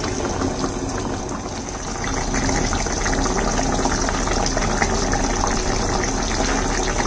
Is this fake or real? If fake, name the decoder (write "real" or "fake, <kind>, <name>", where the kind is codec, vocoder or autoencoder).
real